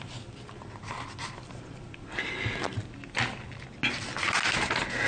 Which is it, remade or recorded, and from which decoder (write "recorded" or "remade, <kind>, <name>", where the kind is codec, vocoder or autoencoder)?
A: recorded